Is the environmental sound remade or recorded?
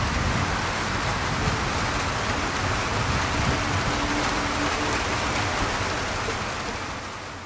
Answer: recorded